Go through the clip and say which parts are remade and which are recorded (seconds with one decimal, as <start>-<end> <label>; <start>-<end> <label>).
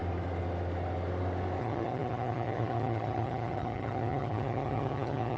0.0-1.6 recorded; 1.6-5.4 remade